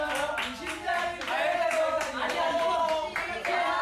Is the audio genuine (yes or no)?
yes